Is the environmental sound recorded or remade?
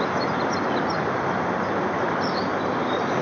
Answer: recorded